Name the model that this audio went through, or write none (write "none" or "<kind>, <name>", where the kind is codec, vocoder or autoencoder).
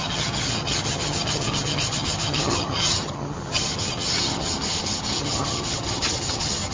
vocoder, HiFi-GAN